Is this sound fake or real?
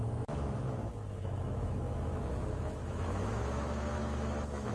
fake